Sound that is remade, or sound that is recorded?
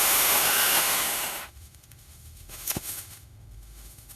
remade